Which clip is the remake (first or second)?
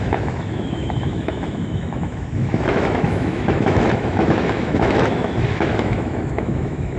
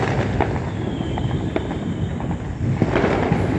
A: first